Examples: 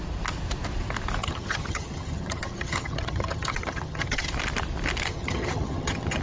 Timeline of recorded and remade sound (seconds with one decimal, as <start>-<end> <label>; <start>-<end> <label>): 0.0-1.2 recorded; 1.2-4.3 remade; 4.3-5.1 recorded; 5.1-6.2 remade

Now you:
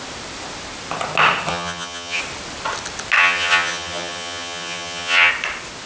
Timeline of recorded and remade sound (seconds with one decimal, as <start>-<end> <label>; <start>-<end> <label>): 0.0-1.5 recorded; 1.5-2.2 remade; 2.2-3.2 recorded; 3.2-5.3 remade; 5.3-5.9 recorded

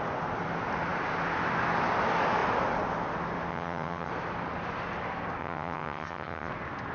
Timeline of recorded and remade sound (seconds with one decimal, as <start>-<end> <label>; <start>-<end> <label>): 0.0-3.5 recorded; 3.5-4.1 remade; 4.1-5.4 recorded; 5.4-6.5 remade; 6.5-6.9 recorded